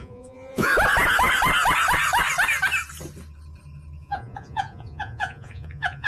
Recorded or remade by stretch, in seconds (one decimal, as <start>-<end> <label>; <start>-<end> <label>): 0.0-0.7 remade; 0.7-4.0 recorded; 4.0-6.1 remade